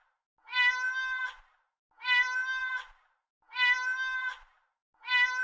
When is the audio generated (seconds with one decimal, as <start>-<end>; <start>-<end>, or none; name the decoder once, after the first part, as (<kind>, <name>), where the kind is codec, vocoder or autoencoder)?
none